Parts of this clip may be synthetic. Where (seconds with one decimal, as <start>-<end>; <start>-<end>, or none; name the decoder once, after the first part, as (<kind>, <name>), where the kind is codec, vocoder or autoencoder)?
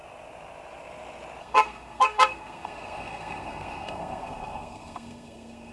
1.4-5.7 (codec, SNAC)